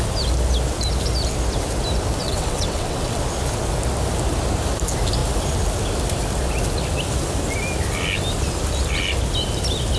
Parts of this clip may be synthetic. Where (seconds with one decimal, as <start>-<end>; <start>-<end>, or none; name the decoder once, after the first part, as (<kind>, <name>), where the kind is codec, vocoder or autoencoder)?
2.2-3.2 (vocoder, WaveNeXt)